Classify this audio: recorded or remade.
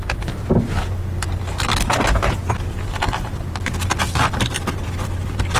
recorded